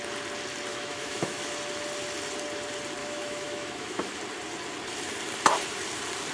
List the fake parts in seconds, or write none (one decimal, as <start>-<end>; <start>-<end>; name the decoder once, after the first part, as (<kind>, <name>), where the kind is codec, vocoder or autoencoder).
0.7-1.4 (autoencoder, DAC-VAE); 3.0-4.2